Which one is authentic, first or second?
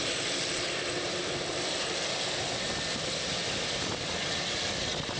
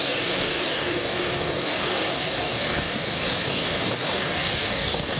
first